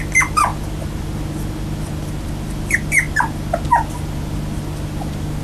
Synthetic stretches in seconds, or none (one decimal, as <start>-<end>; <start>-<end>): none